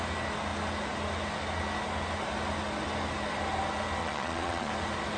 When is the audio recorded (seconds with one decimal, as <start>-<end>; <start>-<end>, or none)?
0.0-4.0; 4.7-5.2